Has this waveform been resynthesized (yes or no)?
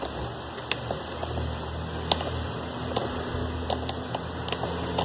no